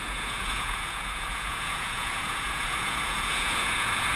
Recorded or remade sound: remade